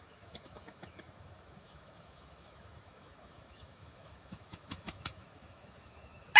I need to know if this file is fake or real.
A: fake